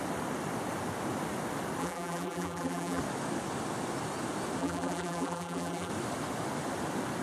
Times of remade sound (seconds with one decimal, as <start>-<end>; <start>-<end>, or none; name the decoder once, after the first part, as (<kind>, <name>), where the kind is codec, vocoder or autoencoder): 1.8-3.0 (vocoder, BigVGAN v2); 4.6-5.9